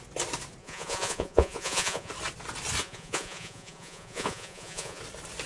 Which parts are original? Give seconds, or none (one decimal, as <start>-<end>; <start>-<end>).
0.0-0.6; 2.1-2.8; 5.0-5.5